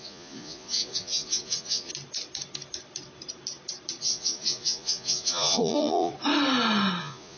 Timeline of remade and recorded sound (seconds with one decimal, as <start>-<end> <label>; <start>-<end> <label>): 0.0-1.9 remade; 1.9-4.0 recorded; 4.0-6.1 remade; 6.1-7.0 recorded; 7.0-7.4 remade